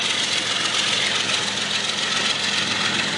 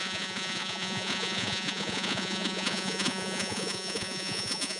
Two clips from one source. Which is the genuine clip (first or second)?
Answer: first